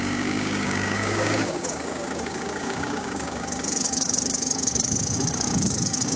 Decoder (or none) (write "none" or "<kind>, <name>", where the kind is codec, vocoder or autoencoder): codec, DAC